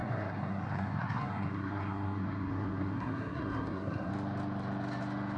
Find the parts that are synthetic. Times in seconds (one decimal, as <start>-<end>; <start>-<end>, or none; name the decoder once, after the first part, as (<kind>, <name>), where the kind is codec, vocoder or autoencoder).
0.0-4.1 (codec, SNAC)